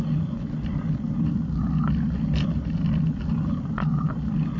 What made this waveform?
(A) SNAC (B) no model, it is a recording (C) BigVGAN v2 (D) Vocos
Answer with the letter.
B